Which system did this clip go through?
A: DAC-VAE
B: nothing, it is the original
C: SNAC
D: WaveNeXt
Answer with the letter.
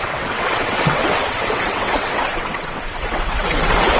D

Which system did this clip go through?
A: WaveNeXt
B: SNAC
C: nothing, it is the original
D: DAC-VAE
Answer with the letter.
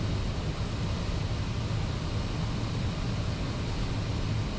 C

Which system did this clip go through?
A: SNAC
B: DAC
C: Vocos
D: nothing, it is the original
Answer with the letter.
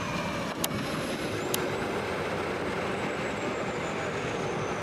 D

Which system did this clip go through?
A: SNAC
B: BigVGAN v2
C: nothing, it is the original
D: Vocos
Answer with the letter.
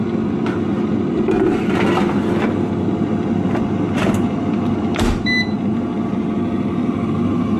C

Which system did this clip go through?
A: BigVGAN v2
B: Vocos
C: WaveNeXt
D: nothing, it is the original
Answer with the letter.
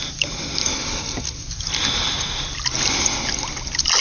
D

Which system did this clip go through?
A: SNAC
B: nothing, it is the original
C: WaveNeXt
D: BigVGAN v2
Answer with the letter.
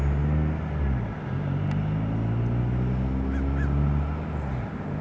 B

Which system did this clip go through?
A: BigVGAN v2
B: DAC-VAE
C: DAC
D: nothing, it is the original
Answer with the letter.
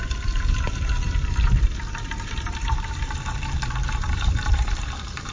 A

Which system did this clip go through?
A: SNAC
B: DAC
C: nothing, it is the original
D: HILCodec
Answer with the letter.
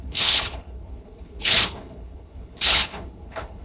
D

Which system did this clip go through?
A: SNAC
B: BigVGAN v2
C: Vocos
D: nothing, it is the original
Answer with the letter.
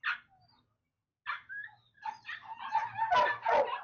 D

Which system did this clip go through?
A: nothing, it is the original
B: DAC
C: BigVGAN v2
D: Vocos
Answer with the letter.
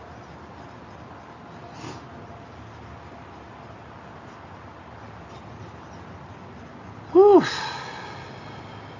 A